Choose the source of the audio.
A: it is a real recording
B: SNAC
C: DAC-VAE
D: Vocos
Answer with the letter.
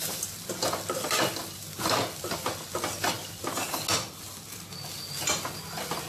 A